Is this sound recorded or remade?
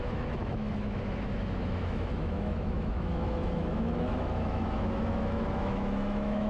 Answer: remade